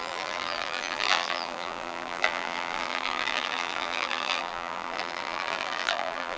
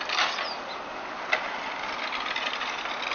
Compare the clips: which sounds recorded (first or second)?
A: second